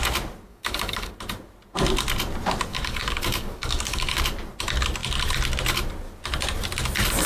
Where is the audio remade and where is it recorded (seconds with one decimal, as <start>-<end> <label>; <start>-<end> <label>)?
0.0-0.5 recorded; 0.5-1.1 remade; 1.1-2.7 recorded; 2.7-4.2 remade; 4.2-7.3 recorded